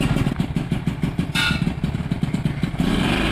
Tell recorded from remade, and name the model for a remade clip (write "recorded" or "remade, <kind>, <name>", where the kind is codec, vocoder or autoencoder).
remade, vocoder, BigVGAN v2